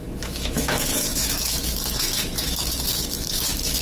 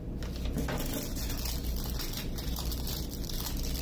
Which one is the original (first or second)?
second